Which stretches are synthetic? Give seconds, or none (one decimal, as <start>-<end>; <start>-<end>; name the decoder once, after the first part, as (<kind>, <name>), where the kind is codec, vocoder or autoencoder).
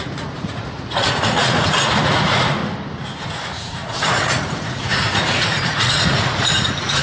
0.0-2.6 (vocoder, Vocos); 3.2-7.0